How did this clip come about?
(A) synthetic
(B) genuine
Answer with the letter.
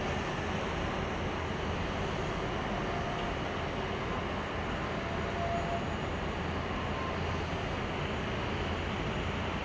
B